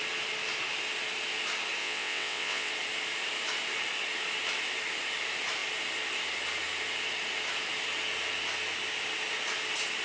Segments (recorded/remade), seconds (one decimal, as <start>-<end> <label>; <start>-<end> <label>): 0.0-1.8 recorded; 1.8-2.7 remade; 2.7-10.0 recorded